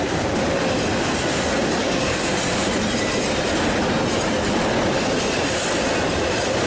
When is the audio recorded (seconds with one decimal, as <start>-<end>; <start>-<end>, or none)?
0.0-1.8; 2.4-6.7